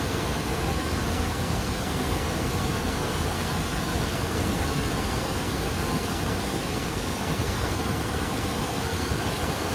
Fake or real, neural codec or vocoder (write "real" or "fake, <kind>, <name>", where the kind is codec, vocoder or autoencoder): fake, codec, SNAC